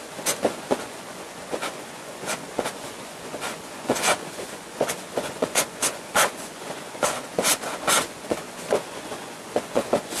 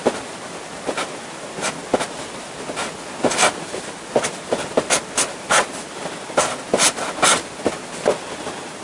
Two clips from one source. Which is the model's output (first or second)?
first